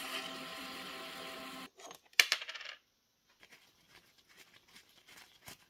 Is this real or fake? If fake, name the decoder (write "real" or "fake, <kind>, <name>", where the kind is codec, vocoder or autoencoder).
real